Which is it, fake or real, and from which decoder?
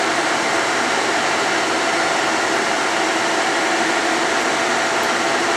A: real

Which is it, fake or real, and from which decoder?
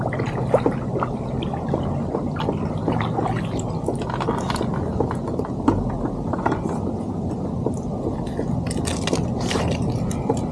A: real